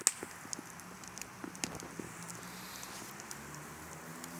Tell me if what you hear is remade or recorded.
recorded